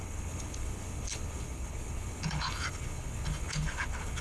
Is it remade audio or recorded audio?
remade